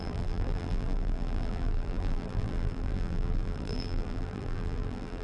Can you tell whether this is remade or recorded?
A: remade